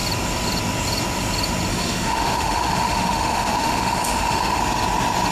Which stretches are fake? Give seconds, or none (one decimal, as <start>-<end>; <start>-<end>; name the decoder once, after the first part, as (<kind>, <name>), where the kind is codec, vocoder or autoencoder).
1.7-4.6 (autoencoder, DAC-VAE)